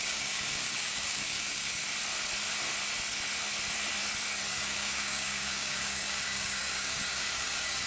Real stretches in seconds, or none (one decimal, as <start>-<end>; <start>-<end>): 1.8-4.5